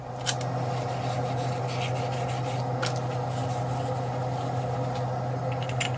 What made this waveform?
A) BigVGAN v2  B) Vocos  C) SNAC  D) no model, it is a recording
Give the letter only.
D